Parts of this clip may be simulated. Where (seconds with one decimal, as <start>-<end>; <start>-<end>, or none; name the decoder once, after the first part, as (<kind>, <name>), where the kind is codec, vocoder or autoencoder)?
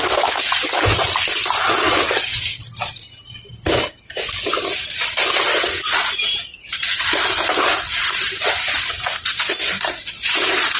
1.0-1.6 (vocoder, BigVGAN v2); 2.5-3.6; 6.5-8.9